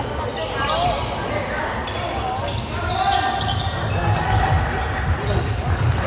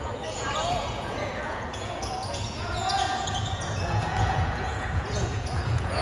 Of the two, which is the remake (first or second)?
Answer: second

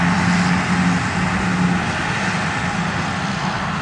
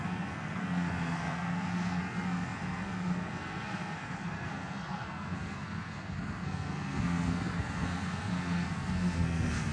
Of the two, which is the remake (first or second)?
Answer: second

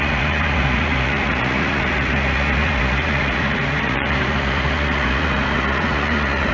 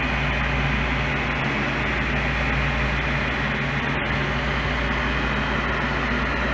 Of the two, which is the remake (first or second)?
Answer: first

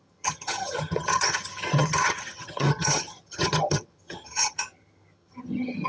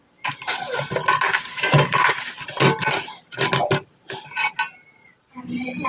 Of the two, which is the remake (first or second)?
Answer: first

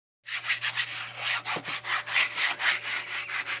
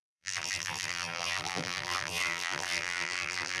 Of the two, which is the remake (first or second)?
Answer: second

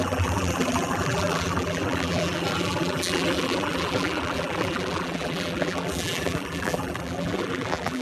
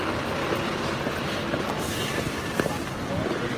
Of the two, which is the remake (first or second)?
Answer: first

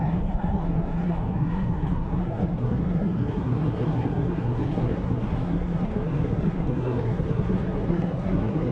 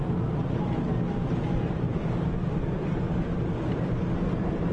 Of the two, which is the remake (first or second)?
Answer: first